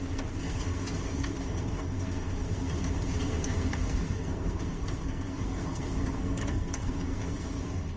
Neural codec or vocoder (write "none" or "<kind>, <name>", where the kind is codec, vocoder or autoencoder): codec, SNAC